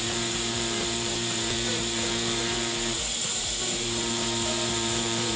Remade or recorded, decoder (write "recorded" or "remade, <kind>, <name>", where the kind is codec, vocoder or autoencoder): remade, vocoder, BigVGAN v2